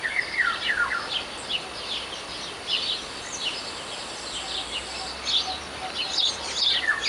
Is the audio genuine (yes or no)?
yes